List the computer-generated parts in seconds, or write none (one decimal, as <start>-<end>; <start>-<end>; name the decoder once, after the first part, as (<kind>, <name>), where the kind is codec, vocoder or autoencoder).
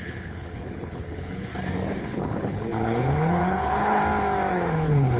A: 0.0-1.5 (codec, HILCodec); 2.0-4.0; 4.5-5.2